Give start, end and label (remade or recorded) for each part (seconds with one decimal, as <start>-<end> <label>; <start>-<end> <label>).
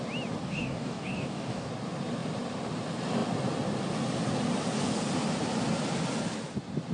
0.0-0.4 recorded; 0.4-1.7 remade; 1.7-6.9 recorded